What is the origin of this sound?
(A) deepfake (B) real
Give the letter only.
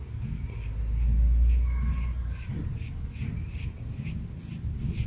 B